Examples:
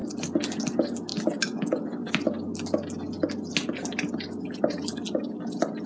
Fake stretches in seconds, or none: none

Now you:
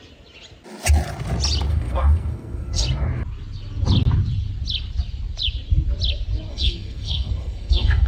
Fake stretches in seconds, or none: 1.7-2.8 (codec, SNAC); 6.5-8.1

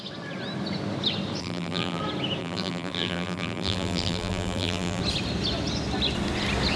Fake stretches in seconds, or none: 1.4-2.0 (vocoder, BigVGAN v2); 2.4-5.0

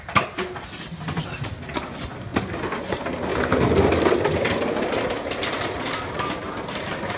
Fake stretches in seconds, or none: 3.3-5.0 (vocoder, BigVGAN v2)

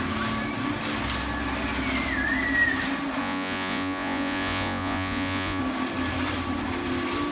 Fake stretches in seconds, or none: 3.2-5.6 (vocoder, Vocos)